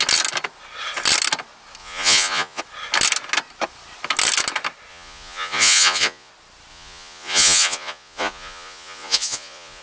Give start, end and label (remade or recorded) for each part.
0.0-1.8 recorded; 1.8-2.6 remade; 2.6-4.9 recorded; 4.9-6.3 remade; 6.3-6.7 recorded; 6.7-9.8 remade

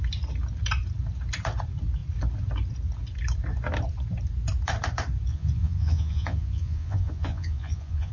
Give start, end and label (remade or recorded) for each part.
0.0-5.3 recorded; 5.3-8.1 remade

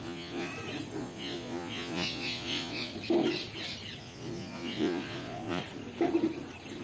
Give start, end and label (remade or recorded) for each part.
0.0-0.5 remade; 0.5-1.0 recorded; 1.0-2.9 remade; 2.9-4.0 recorded; 4.0-5.6 remade; 5.6-6.8 recorded

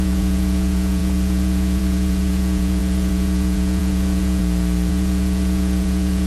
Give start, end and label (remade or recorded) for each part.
0.0-4.4 remade; 4.4-4.9 recorded; 4.9-6.3 remade

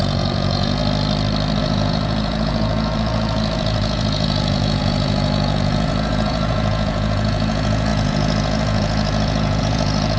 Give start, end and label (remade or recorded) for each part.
0.0-0.8 remade; 0.8-1.6 recorded; 1.6-10.2 remade

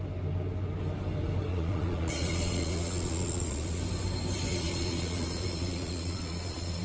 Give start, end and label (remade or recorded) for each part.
0.0-1.5 recorded; 1.5-3.8 remade; 3.8-4.5 recorded; 4.5-6.8 remade